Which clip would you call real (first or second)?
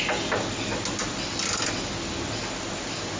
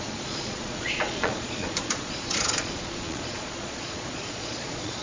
first